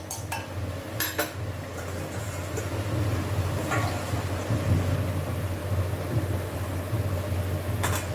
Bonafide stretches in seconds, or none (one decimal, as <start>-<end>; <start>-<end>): 0.0-8.1